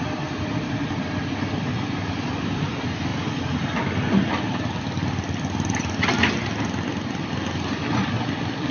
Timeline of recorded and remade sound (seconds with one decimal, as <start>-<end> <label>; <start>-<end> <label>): 0.0-8.7 recorded